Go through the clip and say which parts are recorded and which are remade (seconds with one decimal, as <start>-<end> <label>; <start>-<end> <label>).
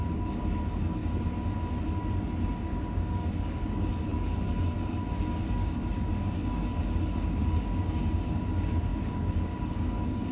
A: 0.0-1.0 remade; 1.0-2.6 recorded; 2.6-10.3 remade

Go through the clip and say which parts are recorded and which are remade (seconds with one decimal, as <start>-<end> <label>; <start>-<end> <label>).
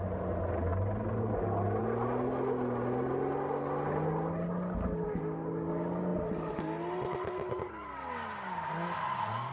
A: 0.0-9.5 recorded